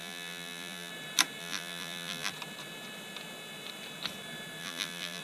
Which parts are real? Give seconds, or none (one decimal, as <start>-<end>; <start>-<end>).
0.9-1.4; 2.3-4.6